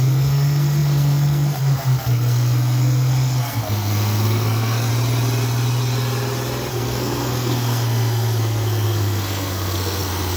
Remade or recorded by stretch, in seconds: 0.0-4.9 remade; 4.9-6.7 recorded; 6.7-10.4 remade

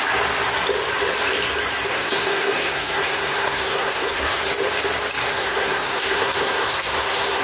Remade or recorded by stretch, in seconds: 0.0-1.9 recorded; 1.9-4.4 remade; 4.4-5.3 recorded; 5.3-7.4 remade

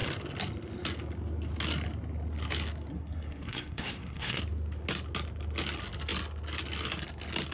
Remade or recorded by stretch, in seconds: 0.0-2.9 recorded; 2.9-4.4 remade; 4.4-7.5 recorded